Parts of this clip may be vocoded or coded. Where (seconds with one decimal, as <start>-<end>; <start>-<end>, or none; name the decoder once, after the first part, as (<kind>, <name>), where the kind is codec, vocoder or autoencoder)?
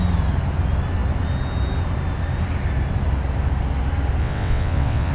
4.2-5.1 (vocoder, WaveNeXt)